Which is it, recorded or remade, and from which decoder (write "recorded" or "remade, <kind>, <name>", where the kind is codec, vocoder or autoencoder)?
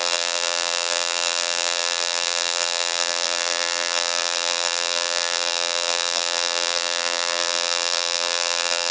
remade, vocoder, BigVGAN v2